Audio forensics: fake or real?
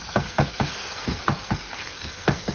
fake